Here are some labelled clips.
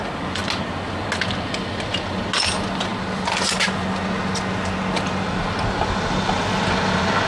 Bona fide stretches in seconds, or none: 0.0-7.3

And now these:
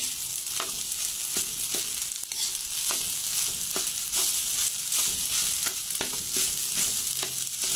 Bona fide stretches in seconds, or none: 0.0-7.8

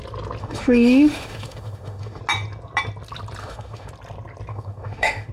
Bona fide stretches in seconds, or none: 0.0-0.4; 2.2-3.4; 3.9-4.5

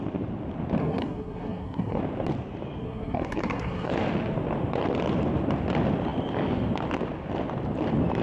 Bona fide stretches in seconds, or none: 0.0-0.8; 2.0-2.8; 3.9-8.2

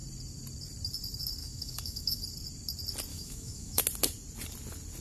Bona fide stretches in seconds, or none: 0.0-1.4; 2.2-3.1; 3.8-5.0